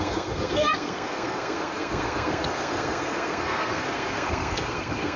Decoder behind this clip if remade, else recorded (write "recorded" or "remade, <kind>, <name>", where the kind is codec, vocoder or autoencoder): remade, codec, SNAC